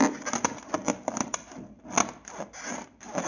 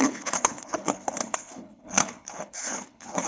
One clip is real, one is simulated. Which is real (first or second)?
first